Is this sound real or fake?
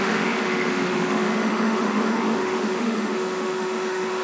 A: fake